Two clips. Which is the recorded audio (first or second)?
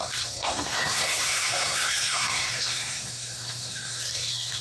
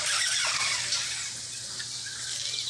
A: second